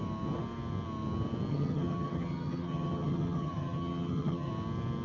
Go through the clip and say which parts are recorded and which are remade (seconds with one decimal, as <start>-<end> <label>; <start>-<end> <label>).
0.0-1.5 recorded; 1.5-4.5 remade; 4.5-5.0 recorded